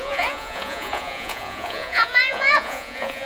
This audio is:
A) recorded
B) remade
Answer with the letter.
B